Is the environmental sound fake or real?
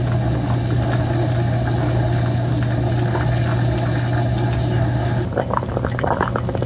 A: real